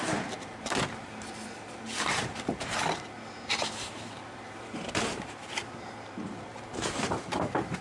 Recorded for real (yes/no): no